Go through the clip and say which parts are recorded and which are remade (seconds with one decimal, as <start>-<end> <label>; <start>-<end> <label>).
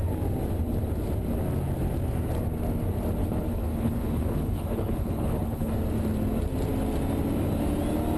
0.0-3.2 recorded; 3.2-5.7 remade; 5.7-8.2 recorded